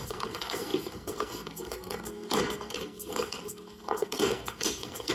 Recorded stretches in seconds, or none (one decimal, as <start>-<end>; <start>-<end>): none